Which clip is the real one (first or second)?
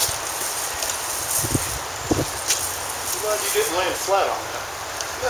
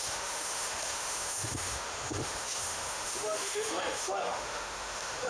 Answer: first